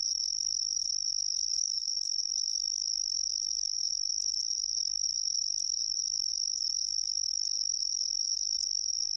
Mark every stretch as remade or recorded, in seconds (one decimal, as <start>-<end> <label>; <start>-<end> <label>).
0.0-1.5 recorded; 1.5-2.3 remade; 2.3-9.2 recorded